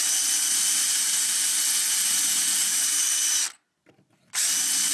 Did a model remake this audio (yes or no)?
no